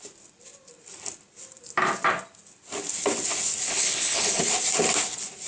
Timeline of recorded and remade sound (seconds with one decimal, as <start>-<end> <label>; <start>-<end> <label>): 0.0-3.7 recorded; 3.7-4.4 remade; 4.4-5.5 recorded